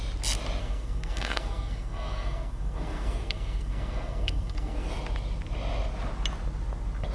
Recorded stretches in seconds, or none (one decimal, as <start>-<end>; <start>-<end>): 0.0-0.6; 4.9-7.1